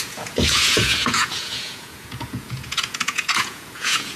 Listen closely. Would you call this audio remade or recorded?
remade